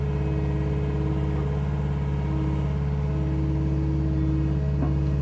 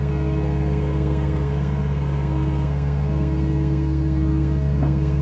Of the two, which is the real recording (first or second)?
first